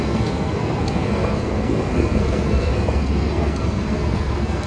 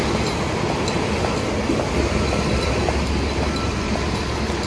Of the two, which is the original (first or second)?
second